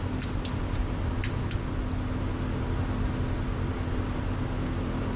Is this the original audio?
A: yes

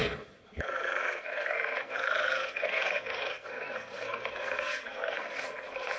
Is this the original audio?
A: no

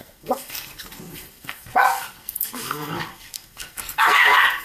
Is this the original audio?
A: no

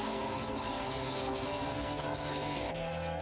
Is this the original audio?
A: no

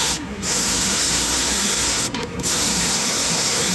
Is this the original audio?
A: no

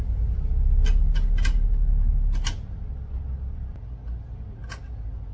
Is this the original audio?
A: yes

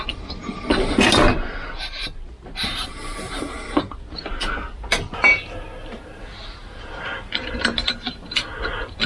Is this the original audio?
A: yes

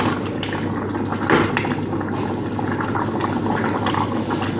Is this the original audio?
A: yes